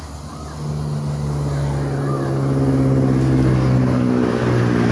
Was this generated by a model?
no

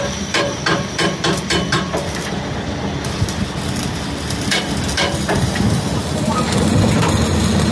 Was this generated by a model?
no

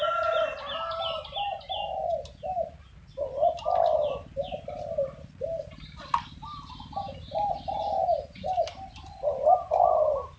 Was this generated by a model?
no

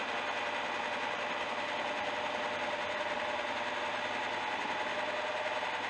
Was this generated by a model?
no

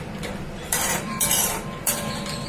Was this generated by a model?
yes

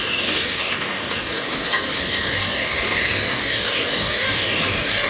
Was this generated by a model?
yes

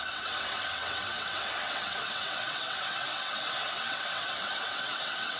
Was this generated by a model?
yes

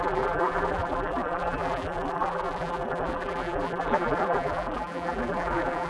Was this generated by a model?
yes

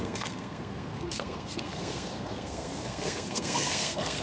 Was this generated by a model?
yes